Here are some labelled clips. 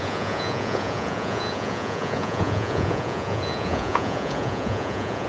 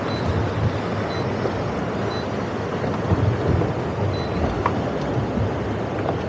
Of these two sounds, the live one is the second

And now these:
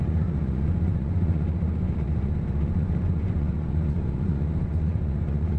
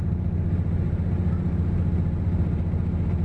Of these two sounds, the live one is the second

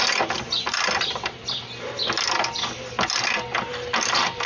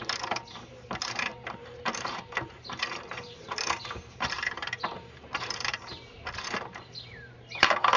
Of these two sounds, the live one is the first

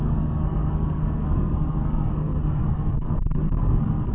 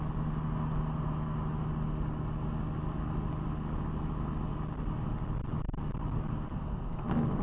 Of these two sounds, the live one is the second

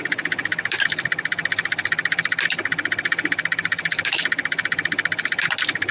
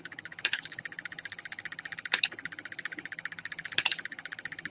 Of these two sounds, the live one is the first